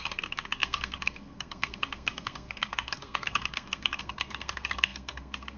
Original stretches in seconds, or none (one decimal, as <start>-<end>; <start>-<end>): none